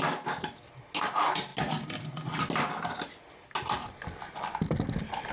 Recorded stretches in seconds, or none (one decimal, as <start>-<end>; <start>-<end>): 0.0-5.3